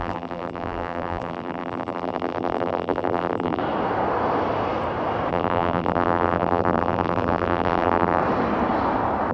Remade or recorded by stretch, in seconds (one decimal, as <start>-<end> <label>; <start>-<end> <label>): 0.0-3.6 remade; 3.6-5.3 recorded; 5.3-8.2 remade; 8.2-9.3 recorded